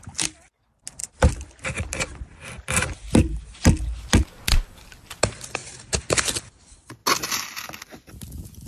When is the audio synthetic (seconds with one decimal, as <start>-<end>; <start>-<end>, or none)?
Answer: none